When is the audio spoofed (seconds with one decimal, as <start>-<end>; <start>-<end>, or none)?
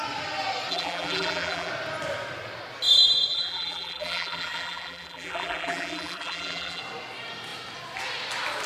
0.7-1.7; 3.3-6.8